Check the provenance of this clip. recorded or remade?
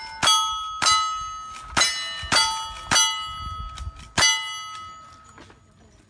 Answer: recorded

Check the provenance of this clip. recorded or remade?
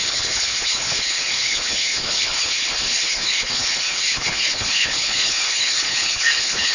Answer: remade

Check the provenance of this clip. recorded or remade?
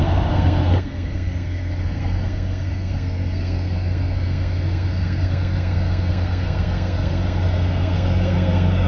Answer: remade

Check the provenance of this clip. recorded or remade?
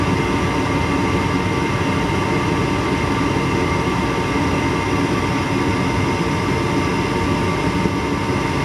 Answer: recorded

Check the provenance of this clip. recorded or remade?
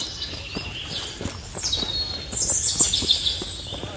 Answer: recorded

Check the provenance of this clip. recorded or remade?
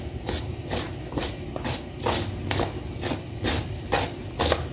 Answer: recorded